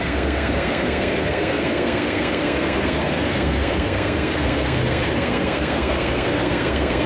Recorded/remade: remade